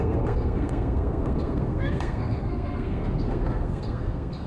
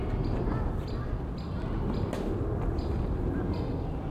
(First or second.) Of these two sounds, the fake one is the first